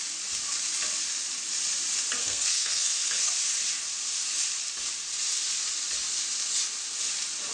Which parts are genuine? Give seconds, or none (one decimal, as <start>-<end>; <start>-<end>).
0.0-2.2; 3.3-7.5